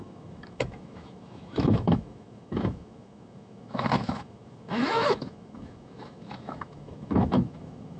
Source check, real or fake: fake